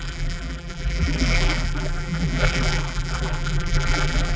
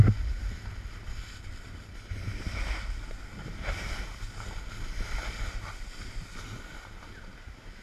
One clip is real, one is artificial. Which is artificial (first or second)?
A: first